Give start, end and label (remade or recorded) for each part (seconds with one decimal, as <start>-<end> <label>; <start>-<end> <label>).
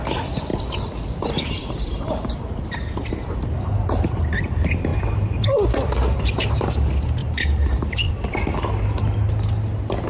0.0-0.5 recorded; 0.5-3.1 remade; 3.1-4.9 recorded; 4.9-6.2 remade; 6.2-7.2 recorded; 7.2-8.1 remade; 8.1-10.1 recorded